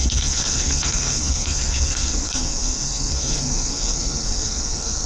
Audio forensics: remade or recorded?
remade